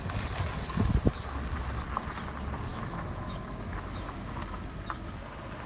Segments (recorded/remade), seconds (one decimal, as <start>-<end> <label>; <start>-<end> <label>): 0.0-2.7 recorded; 2.7-4.6 remade; 4.6-5.7 recorded